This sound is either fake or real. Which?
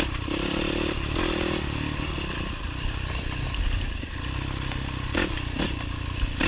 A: real